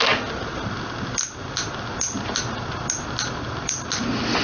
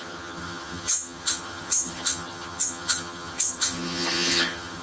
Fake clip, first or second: second